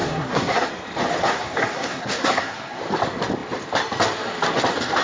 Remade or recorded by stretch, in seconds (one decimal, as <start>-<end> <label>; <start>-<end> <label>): 0.0-0.7 remade; 0.7-1.2 recorded; 1.2-2.8 remade; 2.8-5.0 recorded